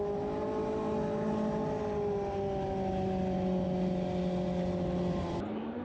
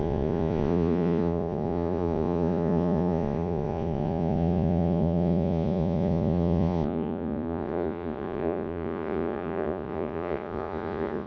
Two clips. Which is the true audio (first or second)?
first